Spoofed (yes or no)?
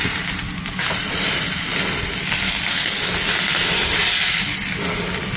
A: no